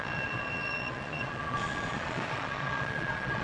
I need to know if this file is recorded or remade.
remade